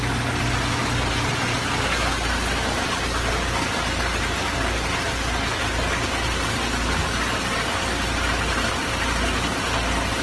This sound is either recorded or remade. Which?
recorded